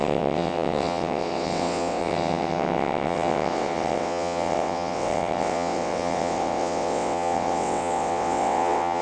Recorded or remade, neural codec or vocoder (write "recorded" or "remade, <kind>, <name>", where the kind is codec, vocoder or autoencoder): remade, vocoder, WaveNeXt